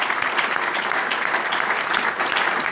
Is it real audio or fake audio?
real